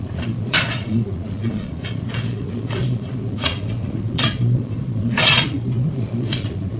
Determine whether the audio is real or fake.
fake